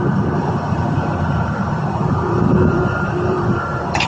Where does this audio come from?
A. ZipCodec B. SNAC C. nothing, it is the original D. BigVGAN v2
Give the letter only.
D